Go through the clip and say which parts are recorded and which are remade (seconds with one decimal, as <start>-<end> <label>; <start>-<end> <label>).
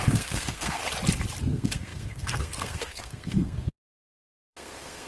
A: 0.0-0.8 remade; 0.8-1.4 recorded; 1.4-5.1 remade